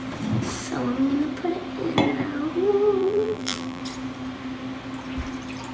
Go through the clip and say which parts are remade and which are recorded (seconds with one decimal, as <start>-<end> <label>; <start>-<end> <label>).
0.0-3.0 recorded; 3.0-3.8 remade; 3.8-5.7 recorded

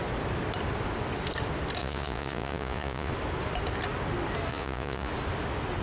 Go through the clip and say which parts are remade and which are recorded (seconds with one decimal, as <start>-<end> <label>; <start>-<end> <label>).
0.0-1.8 recorded; 1.8-3.1 remade; 3.1-4.5 recorded; 4.5-5.1 remade; 5.1-5.8 recorded